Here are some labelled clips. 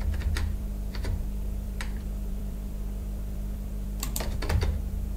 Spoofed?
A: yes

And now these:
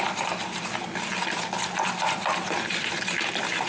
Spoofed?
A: no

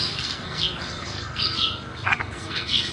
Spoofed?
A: yes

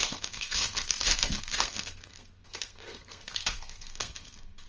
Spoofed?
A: yes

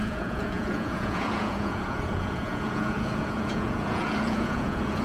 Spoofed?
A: yes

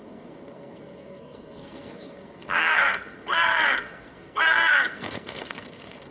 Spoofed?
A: yes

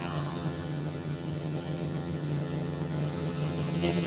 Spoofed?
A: yes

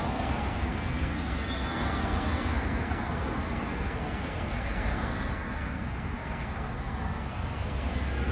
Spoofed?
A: yes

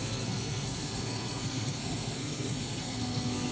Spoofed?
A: yes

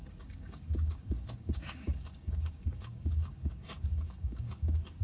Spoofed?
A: yes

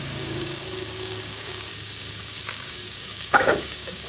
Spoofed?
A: yes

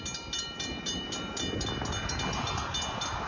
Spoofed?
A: no